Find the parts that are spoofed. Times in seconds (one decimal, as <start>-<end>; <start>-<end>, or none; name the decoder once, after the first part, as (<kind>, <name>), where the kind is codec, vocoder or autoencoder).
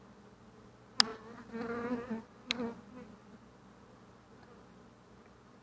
none